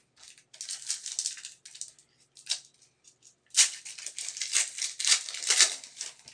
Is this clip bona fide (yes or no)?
yes